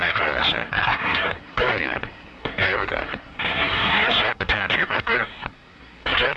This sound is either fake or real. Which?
fake